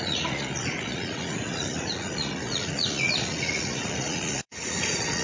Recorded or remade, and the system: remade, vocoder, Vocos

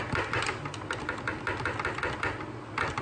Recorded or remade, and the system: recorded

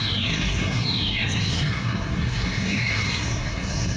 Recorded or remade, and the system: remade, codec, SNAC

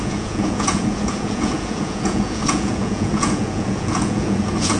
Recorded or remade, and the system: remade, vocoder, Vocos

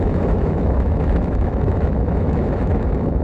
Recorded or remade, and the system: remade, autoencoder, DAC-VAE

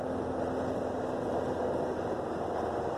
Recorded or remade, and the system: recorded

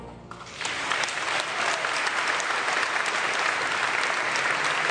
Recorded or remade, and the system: recorded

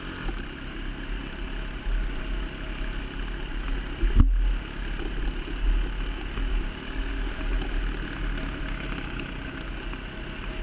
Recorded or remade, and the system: recorded